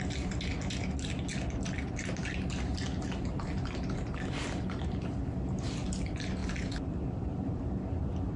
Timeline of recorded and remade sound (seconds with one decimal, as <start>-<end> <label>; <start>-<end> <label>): 0.0-8.4 recorded